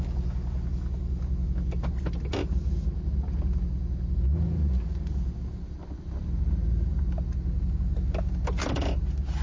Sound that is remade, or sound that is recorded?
recorded